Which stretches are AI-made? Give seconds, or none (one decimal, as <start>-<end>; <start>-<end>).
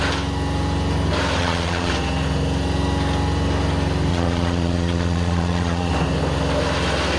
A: 1.4-1.9; 4.1-5.9